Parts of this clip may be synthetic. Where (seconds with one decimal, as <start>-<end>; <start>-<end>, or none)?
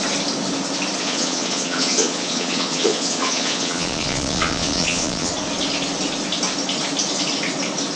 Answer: 1.0-5.3